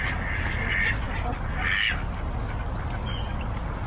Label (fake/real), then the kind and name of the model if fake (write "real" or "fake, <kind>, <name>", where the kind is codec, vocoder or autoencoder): real